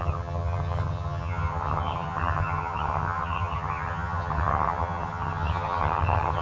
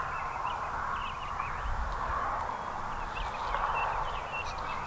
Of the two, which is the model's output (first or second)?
first